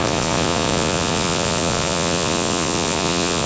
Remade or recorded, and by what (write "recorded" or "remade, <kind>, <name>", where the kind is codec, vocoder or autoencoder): remade, vocoder, Vocos